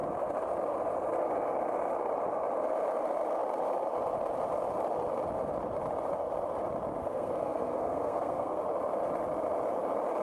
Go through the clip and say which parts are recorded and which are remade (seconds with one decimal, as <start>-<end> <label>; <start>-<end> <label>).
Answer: 0.0-7.0 recorded; 7.0-8.6 remade; 8.6-10.2 recorded